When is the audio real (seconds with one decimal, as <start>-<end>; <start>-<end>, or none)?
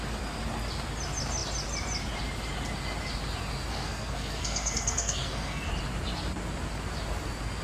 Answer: 0.0-3.7; 5.7-7.6